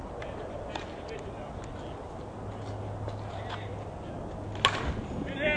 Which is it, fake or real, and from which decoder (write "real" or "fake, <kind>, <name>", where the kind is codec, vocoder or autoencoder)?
real